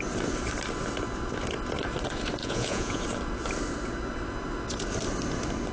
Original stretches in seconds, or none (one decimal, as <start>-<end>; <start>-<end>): 0.0-2.4; 3.0-5.7